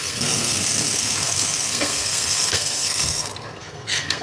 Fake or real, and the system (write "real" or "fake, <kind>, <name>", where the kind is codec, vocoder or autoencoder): fake, codec, SNAC